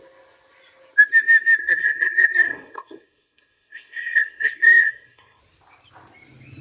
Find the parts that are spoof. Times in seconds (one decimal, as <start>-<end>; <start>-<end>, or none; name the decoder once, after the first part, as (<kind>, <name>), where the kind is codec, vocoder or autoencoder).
1.6-5.4 (codec, SNAC)